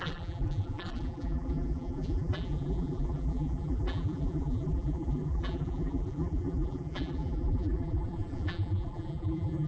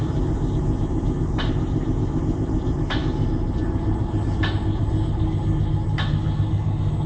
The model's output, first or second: first